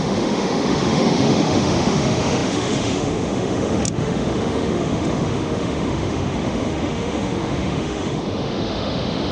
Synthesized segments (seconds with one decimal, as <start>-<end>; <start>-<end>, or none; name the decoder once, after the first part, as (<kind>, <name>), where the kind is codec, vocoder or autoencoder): 0.0-9.3 (autoencoder, DAC-VAE)